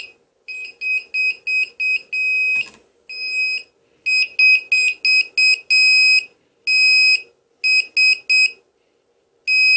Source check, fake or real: real